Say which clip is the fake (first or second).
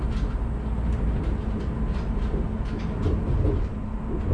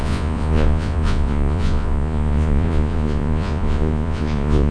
second